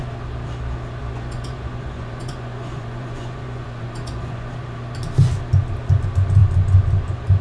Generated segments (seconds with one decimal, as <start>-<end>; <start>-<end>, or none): 1.0-4.5